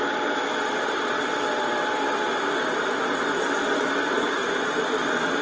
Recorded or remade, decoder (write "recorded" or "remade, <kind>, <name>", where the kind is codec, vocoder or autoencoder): remade, vocoder, BigVGAN v2